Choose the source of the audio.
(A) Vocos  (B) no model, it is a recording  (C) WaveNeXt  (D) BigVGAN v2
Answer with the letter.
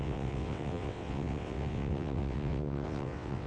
C